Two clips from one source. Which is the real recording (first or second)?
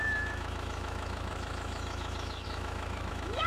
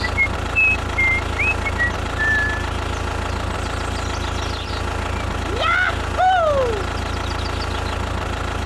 second